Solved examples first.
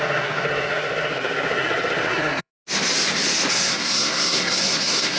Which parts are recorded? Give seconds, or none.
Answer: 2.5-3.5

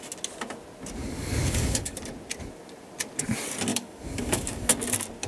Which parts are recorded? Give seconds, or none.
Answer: 0.0-1.0; 2.1-3.7; 4.6-5.3

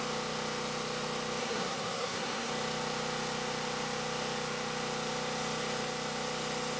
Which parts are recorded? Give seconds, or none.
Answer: 0.0-1.4; 2.5-6.8

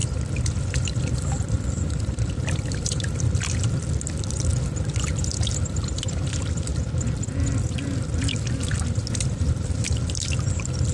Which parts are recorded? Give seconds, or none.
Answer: 4.5-5.3; 6.7-9.2

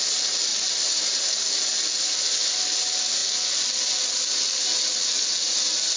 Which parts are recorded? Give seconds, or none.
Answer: 0.0-6.0

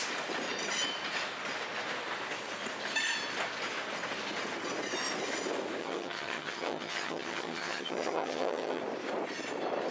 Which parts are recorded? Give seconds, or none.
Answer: 0.0-5.8; 8.8-9.9

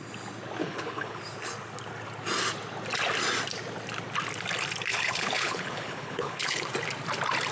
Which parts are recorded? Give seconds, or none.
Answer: 0.0-0.6; 1.2-4.9; 6.7-7.5